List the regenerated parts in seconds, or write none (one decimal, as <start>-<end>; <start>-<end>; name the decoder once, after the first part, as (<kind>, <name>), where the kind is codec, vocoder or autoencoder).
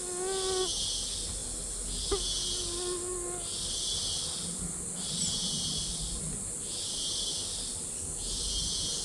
5.4-6.2 (vocoder, BigVGAN v2)